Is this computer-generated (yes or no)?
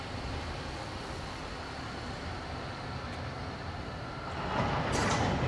no